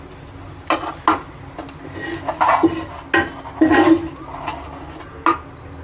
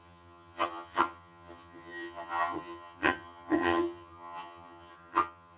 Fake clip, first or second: second